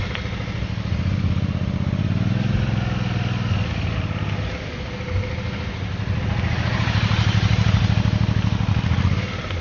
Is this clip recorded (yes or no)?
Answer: yes